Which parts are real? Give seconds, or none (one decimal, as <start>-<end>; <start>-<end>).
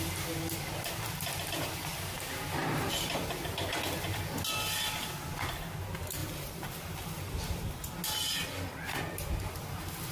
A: 0.0-2.6; 3.5-6.2; 8.0-10.1